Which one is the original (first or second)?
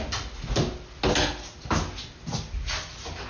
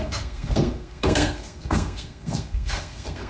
first